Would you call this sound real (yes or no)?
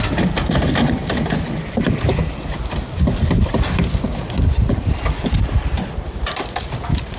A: yes